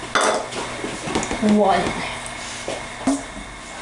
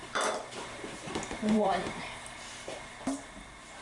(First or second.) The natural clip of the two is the first